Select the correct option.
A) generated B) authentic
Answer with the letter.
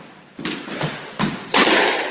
B